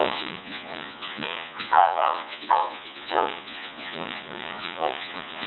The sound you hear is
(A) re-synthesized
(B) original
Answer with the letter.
A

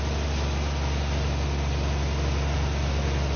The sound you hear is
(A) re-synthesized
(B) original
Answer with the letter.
B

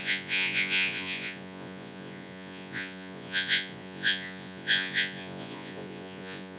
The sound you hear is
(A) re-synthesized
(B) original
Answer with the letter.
A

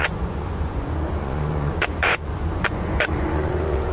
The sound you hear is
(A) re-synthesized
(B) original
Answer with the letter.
A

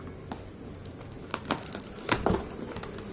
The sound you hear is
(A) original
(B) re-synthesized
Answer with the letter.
A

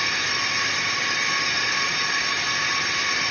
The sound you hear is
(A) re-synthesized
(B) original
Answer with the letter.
B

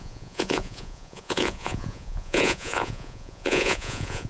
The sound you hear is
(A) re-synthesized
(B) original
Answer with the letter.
A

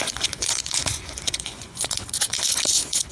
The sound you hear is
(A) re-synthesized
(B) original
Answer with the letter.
A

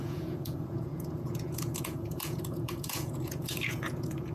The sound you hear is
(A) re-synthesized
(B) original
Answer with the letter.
A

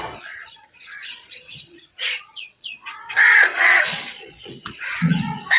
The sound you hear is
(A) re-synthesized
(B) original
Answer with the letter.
A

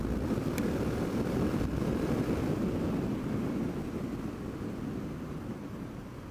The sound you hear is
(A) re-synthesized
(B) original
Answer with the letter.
B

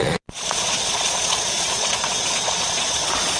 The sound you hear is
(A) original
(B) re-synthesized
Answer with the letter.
B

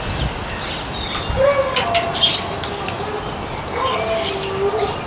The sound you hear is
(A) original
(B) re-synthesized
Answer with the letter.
A